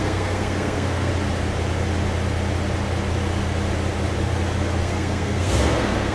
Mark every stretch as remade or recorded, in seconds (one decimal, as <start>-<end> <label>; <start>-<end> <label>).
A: 0.0-1.1 remade; 1.1-4.8 recorded; 4.8-6.1 remade